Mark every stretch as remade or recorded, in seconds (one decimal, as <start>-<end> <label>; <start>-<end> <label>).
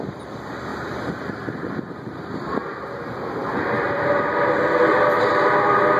0.0-0.7 recorded; 0.7-2.3 remade; 2.3-3.4 recorded; 3.4-5.5 remade; 5.5-6.0 recorded